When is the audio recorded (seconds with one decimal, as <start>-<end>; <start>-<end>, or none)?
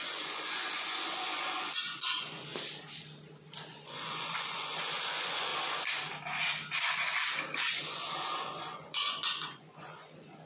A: 2.5-3.7; 5.5-7.7